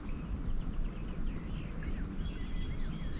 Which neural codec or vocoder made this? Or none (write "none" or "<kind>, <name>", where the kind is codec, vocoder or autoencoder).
none